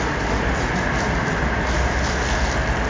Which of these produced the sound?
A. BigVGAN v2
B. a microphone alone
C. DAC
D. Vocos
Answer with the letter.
B